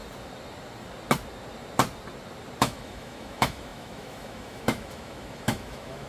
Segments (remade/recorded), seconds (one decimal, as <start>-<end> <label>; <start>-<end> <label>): 0.0-2.6 recorded; 2.6-6.1 remade